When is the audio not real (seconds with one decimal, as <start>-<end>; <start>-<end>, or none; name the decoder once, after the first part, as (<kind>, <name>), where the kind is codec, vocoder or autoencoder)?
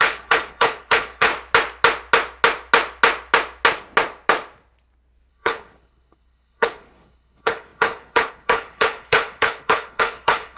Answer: 0.0-1.3 (codec, HILCodec); 5.3-10.6